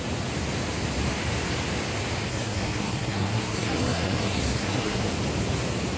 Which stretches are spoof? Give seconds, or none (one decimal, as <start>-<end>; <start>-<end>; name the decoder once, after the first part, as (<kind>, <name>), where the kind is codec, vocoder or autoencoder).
2.3-5.1 (codec, SNAC)